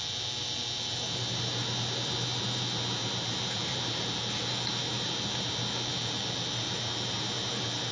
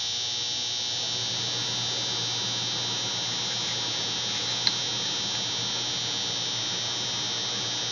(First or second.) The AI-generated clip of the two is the first